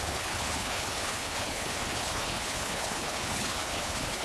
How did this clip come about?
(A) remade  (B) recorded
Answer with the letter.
A